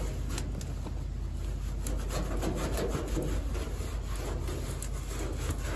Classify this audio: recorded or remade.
recorded